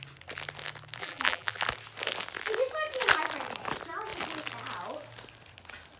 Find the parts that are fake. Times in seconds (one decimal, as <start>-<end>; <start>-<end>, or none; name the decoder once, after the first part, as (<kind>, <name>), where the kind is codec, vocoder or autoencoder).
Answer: 1.0-1.6 (vocoder, BigVGAN v2)